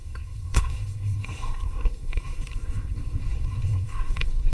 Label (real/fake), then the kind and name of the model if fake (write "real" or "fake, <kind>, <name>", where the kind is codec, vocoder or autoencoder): fake, codec, SNAC